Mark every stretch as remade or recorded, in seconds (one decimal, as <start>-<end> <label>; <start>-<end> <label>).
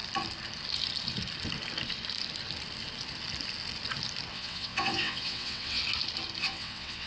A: 0.0-4.3 recorded; 4.3-5.8 remade; 5.8-6.4 recorded; 6.4-7.1 remade